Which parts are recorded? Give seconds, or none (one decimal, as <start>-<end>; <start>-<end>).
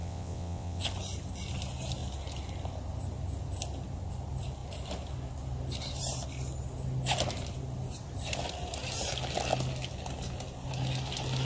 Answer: 0.8-11.4